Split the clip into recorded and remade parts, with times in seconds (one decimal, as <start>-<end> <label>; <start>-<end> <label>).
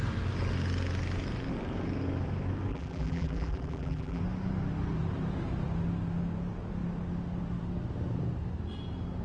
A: 0.0-2.7 recorded; 2.7-4.2 remade; 4.2-9.2 recorded